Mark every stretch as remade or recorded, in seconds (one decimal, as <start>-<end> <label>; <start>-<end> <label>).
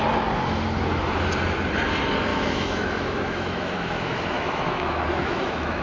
0.0-2.3 recorded; 2.3-5.8 remade